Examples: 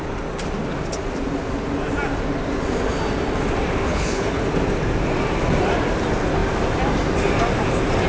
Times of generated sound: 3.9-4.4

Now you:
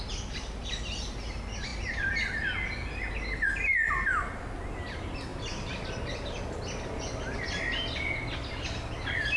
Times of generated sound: none

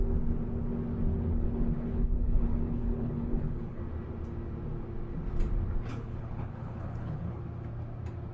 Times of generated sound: 1.1-3.8; 5.9-7.4

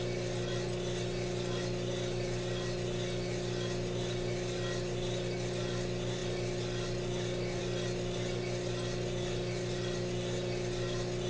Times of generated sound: none

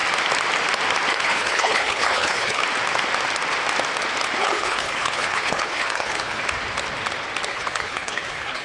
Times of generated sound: 1.1-2.6; 4.4-6.4; 7.5-8.6